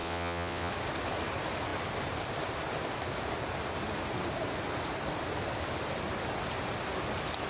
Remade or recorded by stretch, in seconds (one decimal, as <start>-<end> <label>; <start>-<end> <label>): 0.0-0.7 remade; 0.7-7.5 recorded